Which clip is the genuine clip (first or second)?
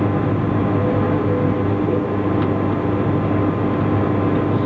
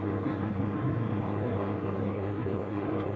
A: first